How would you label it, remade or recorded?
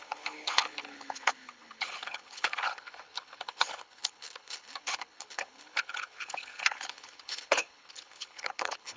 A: remade